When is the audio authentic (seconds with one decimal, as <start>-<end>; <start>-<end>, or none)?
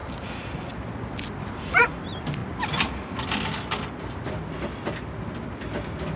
0.0-6.2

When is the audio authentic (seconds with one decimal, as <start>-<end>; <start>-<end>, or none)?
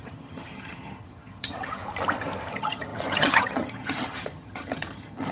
1.8-2.5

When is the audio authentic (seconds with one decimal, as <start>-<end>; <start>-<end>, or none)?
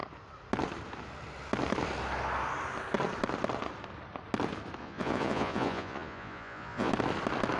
0.0-4.8; 6.9-7.6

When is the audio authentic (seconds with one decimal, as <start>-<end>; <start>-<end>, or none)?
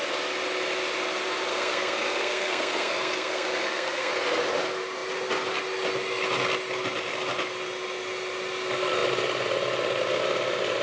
0.0-1.5; 4.1-10.8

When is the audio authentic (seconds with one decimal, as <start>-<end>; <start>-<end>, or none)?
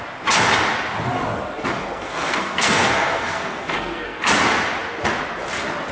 0.0-1.8; 4.3-5.9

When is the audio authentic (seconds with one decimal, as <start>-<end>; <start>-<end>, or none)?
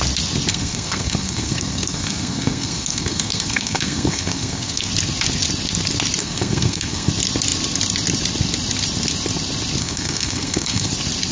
0.0-0.5; 4.9-6.2; 7.1-9.8; 10.9-11.3